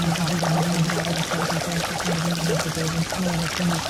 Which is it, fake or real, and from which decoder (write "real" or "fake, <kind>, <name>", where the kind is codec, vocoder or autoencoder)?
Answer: real